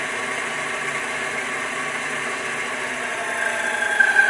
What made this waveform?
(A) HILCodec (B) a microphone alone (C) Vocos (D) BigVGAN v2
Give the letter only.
B